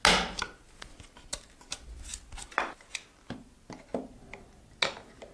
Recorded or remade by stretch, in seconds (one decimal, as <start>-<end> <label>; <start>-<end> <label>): 0.0-5.3 recorded